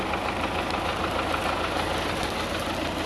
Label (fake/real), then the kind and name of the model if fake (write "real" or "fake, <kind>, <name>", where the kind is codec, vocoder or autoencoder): real